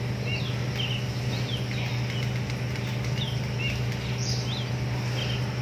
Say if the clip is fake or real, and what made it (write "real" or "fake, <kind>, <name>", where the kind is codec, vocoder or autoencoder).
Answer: real